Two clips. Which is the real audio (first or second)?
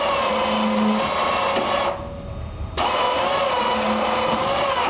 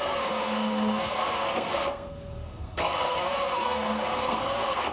first